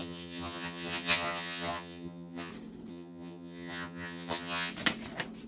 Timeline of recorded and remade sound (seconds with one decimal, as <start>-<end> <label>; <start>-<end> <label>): 0.0-2.5 remade; 2.5-2.9 recorded; 2.9-4.7 remade; 4.7-5.5 recorded